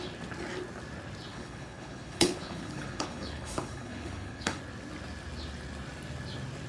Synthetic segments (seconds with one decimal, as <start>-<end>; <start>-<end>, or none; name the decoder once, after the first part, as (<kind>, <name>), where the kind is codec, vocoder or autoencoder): 1.3-4.6 (codec, HILCodec)